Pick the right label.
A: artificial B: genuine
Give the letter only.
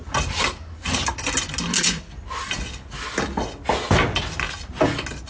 B